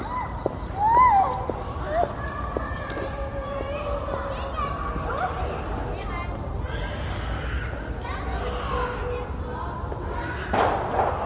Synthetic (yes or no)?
no